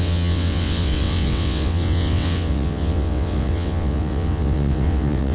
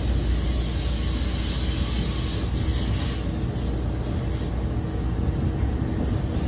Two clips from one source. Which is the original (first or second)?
second